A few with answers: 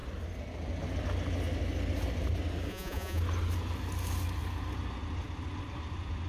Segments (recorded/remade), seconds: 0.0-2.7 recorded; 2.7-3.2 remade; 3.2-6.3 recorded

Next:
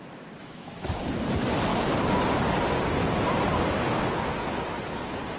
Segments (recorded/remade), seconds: 0.0-0.4 recorded; 0.4-0.9 remade; 0.9-5.4 recorded

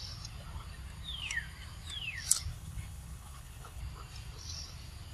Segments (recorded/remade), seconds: 0.0-2.5 recorded; 2.5-3.8 remade; 3.8-5.1 recorded